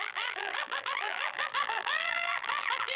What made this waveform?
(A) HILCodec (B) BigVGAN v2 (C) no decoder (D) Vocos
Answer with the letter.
B